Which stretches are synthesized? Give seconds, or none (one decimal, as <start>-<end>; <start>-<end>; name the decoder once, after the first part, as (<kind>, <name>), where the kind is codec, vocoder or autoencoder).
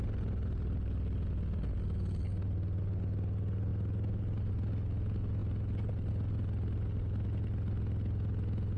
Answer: none